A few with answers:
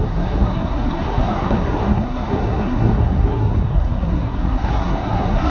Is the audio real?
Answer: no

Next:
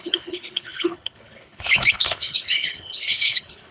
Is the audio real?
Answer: no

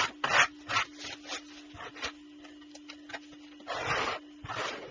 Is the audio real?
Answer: yes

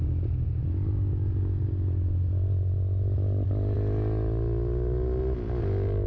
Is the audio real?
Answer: yes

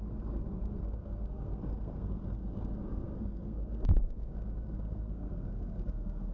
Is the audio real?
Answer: no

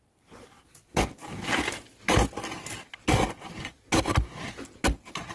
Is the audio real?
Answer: yes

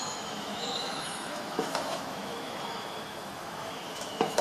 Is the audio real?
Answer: no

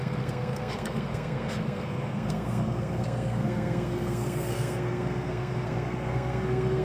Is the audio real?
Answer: no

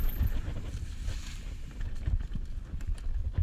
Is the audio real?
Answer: yes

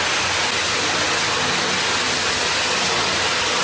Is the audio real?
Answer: yes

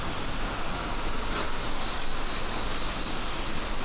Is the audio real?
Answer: yes